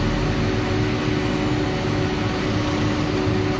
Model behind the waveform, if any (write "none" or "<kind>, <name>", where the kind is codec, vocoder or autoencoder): none